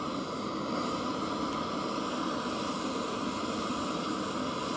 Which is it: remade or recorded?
recorded